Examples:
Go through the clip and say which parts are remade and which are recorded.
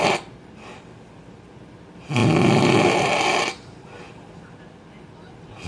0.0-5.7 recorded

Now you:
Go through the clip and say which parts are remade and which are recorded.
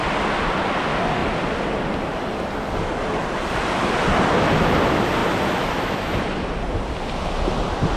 0.0-1.2 recorded; 1.2-1.9 remade; 1.9-8.0 recorded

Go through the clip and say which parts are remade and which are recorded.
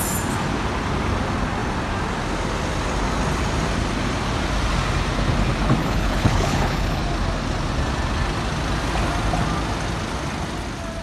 0.0-5.8 recorded; 5.8-7.0 remade; 7.0-11.0 recorded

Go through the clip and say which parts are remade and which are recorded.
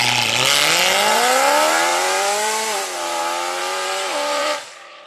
0.0-1.9 recorded; 1.9-3.2 remade; 3.2-3.6 recorded; 3.6-5.1 remade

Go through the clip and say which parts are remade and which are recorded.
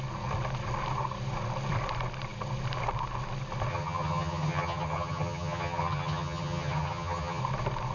0.0-3.7 recorded; 3.7-7.4 remade; 7.4-7.9 recorded